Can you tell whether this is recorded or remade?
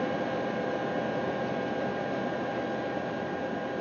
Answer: recorded